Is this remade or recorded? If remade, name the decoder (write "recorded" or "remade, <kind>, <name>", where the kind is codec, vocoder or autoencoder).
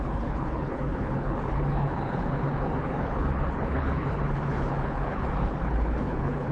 remade, codec, HILCodec